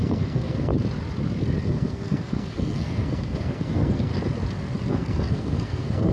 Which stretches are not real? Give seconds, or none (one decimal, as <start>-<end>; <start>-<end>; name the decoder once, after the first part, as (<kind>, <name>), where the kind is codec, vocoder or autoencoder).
0.0-0.7 (codec, SNAC); 1.6-4.1; 4.9-6.1